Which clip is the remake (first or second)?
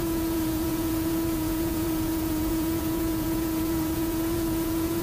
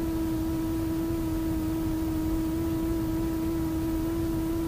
first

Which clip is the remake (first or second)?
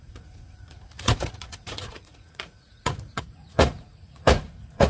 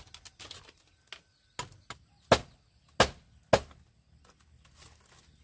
first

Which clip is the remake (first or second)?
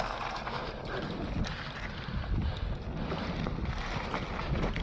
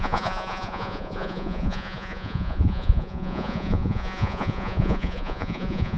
second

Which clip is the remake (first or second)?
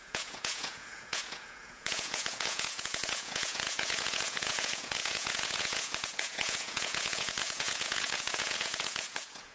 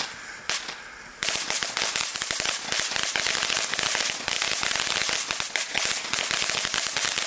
first